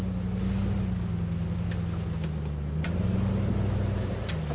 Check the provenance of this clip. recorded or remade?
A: recorded